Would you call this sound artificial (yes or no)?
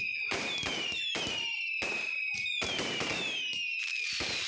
yes